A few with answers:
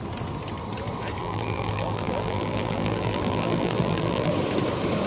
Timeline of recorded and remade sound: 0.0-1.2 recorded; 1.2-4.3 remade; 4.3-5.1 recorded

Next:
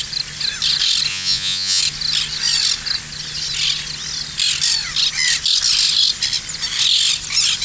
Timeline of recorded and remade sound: 0.0-1.1 recorded; 1.1-1.8 remade; 1.8-7.6 recorded

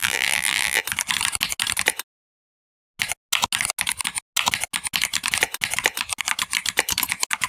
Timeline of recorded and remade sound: 0.0-0.8 remade; 0.8-7.5 recorded

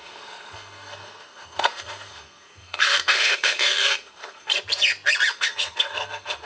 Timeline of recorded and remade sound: 0.0-4.5 remade; 4.5-5.3 recorded; 5.3-6.5 remade

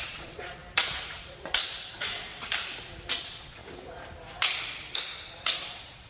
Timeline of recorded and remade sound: 0.0-0.6 remade; 0.6-1.1 recorded; 1.1-2.3 remade; 2.3-3.1 recorded; 3.1-3.6 remade; 3.6-5.6 recorded; 5.6-6.1 remade